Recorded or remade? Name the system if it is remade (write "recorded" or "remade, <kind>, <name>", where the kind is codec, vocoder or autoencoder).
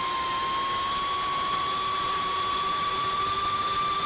recorded